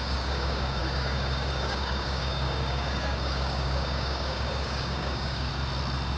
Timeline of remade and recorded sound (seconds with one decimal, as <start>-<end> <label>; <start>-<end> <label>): 0.0-5.5 remade; 5.5-6.2 recorded